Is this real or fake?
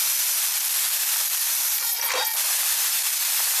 fake